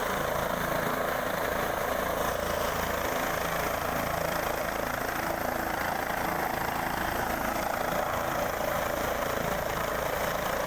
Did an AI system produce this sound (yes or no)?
yes